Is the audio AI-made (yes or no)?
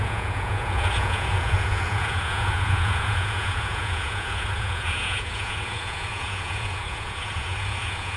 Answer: yes